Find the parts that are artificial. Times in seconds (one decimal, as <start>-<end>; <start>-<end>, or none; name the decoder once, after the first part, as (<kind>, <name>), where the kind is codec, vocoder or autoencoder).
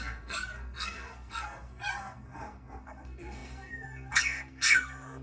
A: 0.0-5.2 (codec, SNAC)